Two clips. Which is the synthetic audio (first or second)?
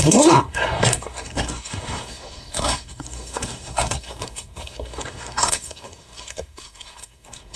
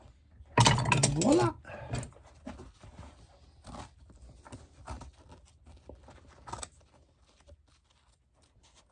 first